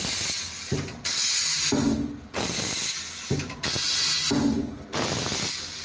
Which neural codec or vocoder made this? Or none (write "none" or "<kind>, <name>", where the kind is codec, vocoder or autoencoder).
none